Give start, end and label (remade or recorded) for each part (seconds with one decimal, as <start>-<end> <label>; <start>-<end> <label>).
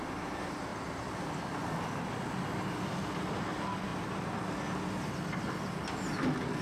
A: 0.0-6.6 recorded